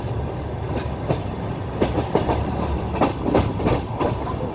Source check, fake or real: real